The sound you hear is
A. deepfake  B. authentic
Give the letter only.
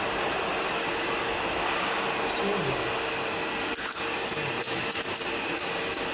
B